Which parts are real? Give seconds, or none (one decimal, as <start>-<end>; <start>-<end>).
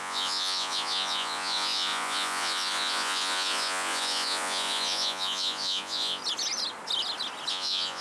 6.2-7.5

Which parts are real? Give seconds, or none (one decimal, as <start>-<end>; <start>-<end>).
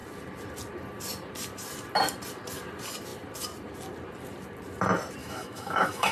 0.0-5.2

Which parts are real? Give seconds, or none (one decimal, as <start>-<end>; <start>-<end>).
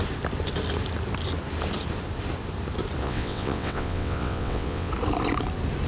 0.0-3.0; 4.9-5.9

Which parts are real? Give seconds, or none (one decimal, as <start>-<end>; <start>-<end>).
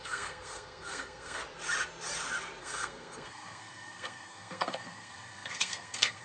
1.4-2.6